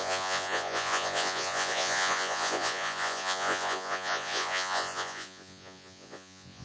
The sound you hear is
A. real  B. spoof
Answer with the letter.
B